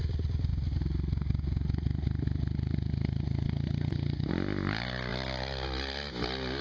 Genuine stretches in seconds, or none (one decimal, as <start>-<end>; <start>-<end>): 0.0-6.6